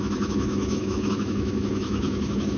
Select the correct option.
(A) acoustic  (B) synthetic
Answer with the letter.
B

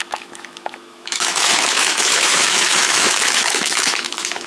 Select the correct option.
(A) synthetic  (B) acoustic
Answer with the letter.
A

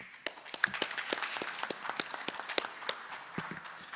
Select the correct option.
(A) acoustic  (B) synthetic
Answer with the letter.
A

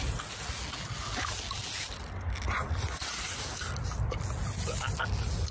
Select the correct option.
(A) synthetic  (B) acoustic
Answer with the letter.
B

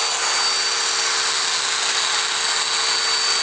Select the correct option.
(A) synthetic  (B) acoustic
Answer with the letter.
B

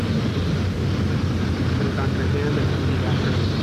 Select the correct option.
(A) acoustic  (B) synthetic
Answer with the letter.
A